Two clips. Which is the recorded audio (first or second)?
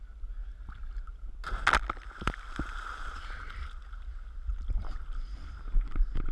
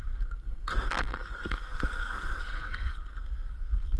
first